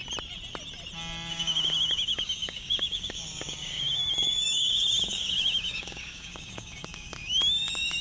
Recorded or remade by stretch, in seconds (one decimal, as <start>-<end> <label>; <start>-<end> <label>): 0.0-1.3 recorded; 1.3-8.0 remade